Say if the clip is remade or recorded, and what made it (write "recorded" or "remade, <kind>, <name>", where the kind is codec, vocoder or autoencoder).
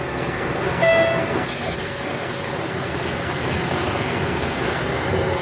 remade, codec, SNAC